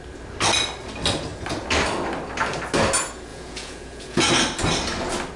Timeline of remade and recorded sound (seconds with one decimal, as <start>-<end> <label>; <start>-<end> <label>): 0.0-3.3 recorded; 3.3-4.3 remade; 4.3-5.4 recorded